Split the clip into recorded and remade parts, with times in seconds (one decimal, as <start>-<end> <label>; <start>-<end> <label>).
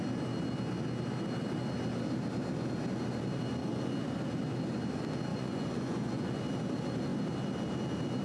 0.0-3.6 recorded; 3.6-4.1 remade; 4.1-5.3 recorded; 5.3-6.4 remade; 6.4-8.2 recorded